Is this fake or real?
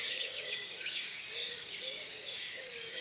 fake